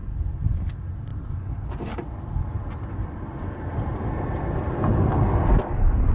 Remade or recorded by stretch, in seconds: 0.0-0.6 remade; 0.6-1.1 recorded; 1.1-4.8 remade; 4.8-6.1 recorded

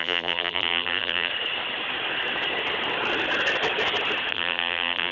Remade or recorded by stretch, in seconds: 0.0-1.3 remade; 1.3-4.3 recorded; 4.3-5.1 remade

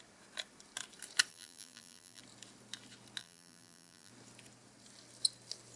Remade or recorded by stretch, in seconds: 0.0-1.3 recorded; 1.3-2.2 remade; 2.2-3.2 recorded; 3.2-4.1 remade; 4.1-5.8 recorded